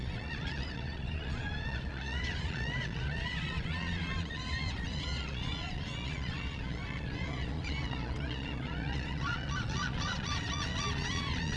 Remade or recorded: remade